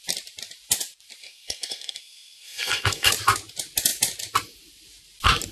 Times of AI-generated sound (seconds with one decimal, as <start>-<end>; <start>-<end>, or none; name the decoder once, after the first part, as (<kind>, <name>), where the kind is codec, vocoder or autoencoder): 1.2-3.1 (codec, SNAC)